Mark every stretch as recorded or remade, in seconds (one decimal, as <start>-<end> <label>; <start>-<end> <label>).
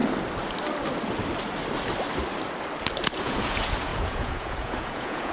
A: 0.0-3.2 recorded; 3.2-5.3 remade